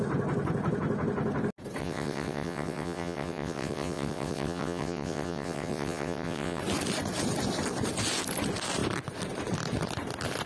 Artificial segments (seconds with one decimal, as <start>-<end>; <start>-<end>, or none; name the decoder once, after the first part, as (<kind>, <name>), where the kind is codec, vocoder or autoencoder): 1.8-6.6 (vocoder, WaveNeXt)